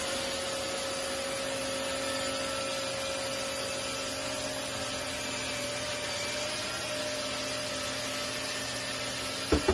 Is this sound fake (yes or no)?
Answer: no